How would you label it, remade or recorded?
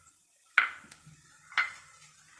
recorded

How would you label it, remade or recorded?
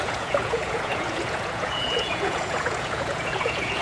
remade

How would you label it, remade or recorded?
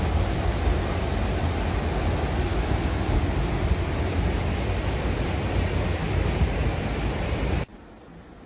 recorded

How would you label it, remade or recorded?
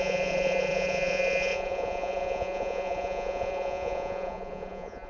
remade